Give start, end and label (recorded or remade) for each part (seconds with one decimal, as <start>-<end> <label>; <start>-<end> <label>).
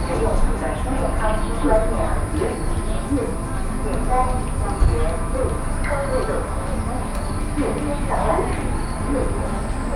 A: 0.0-10.0 recorded